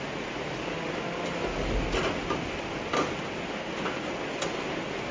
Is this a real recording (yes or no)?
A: yes